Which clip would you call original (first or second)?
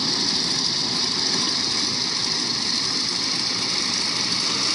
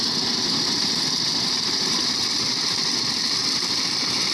first